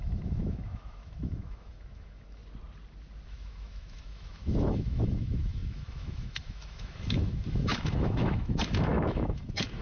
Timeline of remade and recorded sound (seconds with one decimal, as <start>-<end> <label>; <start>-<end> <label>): 0.0-2.4 remade; 2.4-3.3 recorded; 3.3-9.8 remade